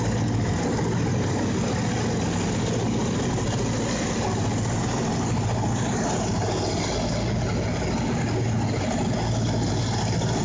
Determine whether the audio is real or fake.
real